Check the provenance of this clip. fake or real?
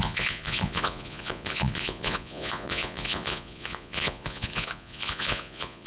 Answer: fake